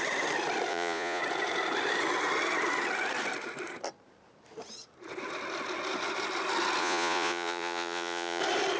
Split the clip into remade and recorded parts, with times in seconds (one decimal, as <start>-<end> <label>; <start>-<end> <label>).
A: 0.0-0.7 recorded; 0.7-1.2 remade; 1.2-6.8 recorded; 6.8-8.4 remade; 8.4-8.8 recorded